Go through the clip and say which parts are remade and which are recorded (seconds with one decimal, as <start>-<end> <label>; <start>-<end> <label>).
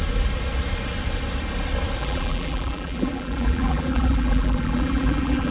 0.0-2.0 recorded; 2.0-5.5 remade